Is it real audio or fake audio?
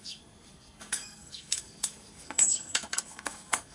fake